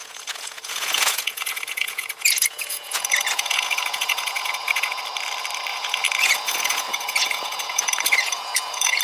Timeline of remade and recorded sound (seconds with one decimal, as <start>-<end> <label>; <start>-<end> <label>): 0.0-5.0 remade; 5.0-5.7 recorded; 5.7-9.0 remade